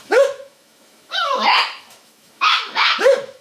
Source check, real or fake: fake